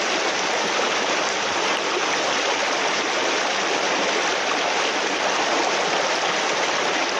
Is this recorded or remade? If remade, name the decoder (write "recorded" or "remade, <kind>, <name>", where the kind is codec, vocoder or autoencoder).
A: recorded